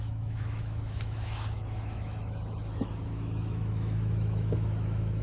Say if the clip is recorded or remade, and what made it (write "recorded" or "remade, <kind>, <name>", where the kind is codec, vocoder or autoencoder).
remade, autoencoder, DAC-VAE